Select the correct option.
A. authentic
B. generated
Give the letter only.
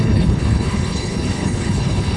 B